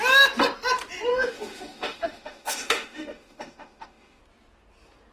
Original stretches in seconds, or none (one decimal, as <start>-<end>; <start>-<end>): 0.0-1.1; 4.2-5.1